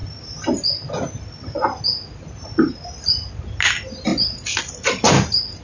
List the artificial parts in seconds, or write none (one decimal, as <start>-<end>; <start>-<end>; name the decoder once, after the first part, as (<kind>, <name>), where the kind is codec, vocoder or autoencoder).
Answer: none